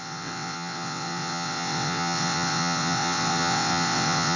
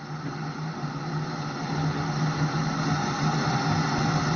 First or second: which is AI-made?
first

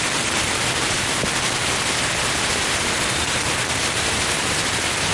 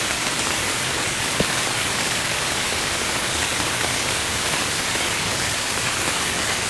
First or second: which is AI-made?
second